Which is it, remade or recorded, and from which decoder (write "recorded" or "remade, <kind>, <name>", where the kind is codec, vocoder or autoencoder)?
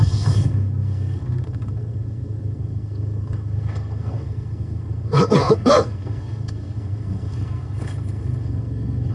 remade, codec, SNAC